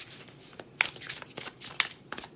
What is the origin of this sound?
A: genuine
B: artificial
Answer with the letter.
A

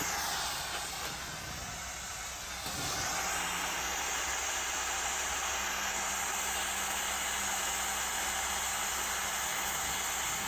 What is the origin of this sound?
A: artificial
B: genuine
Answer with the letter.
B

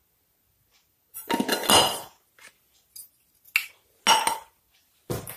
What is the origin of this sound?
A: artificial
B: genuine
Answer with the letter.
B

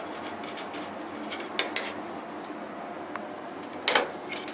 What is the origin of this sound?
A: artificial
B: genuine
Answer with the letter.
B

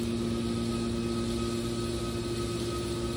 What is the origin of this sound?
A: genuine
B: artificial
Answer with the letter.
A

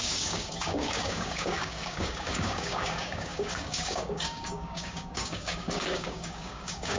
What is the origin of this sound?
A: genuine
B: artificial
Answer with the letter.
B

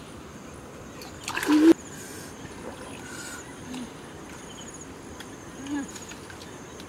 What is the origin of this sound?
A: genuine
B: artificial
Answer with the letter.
A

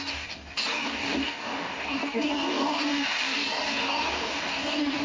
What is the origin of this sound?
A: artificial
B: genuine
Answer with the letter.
A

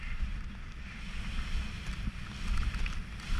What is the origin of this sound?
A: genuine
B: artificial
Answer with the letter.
A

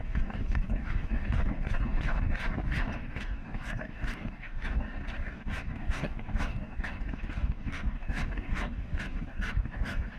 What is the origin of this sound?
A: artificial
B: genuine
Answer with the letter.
A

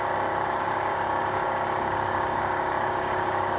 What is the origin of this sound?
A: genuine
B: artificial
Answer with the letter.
B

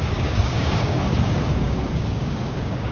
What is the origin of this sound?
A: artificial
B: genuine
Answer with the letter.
A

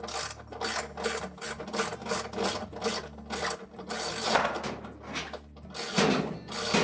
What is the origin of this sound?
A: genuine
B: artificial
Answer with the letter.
A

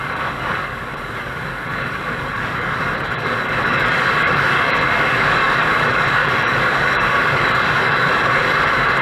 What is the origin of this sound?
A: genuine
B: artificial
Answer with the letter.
B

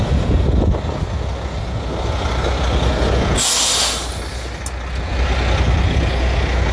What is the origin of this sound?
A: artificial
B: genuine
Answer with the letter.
B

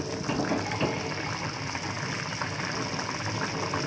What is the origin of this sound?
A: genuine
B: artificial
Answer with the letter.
A